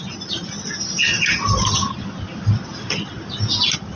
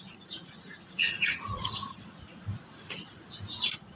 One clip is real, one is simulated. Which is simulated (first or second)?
second